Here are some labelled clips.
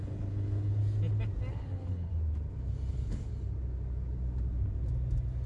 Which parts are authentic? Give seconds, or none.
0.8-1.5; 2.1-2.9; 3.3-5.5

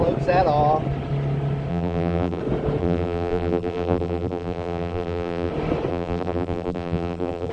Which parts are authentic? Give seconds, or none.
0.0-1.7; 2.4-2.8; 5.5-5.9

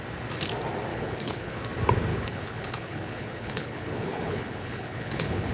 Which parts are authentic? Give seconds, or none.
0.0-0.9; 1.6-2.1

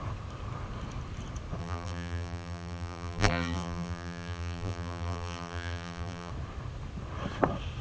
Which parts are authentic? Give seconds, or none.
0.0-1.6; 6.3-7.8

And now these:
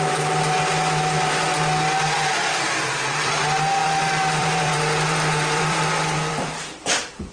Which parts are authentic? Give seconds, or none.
0.0-3.8